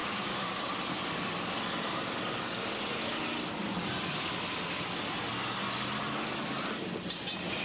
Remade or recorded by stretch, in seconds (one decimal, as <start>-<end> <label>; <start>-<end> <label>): 0.0-0.7 remade; 0.7-7.6 recorded